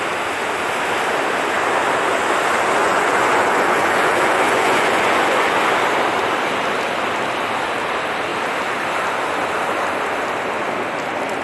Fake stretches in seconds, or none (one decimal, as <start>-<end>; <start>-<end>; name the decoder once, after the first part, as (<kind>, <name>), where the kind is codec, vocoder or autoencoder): 2.8-5.7 (vocoder, Vocos)